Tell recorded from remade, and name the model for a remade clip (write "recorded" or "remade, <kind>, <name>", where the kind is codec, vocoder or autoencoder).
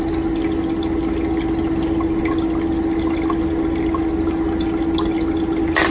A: recorded